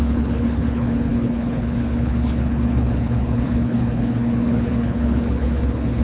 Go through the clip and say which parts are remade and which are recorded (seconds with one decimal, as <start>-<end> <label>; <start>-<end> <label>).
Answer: 0.0-6.0 remade